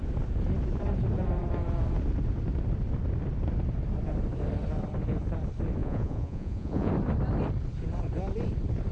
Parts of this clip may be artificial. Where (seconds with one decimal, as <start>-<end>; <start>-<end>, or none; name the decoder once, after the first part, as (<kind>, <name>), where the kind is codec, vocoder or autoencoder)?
5.8-6.9 (vocoder, Vocos)